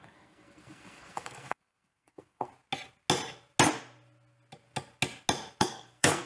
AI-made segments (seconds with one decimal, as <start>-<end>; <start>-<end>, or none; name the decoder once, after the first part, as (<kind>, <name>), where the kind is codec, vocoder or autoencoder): 0.0-2.5 (codec, SNAC); 5.6-6.3